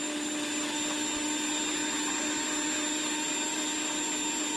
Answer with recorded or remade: recorded